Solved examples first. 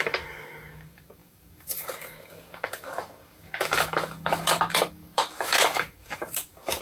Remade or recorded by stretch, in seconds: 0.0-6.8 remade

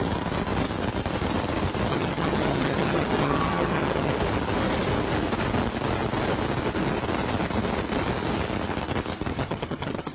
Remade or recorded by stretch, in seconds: 0.0-1.9 recorded; 1.9-4.1 remade; 4.1-9.3 recorded; 9.3-10.1 remade